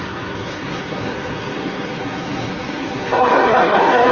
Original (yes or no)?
no